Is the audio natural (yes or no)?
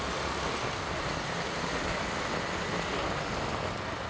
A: yes